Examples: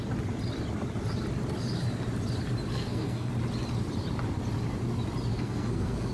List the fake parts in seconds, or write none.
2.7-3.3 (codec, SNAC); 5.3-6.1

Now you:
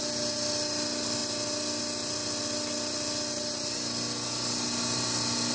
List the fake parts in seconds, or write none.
none